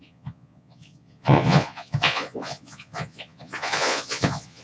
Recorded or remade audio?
remade